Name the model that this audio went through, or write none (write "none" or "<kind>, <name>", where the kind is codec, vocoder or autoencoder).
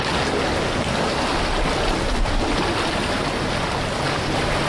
none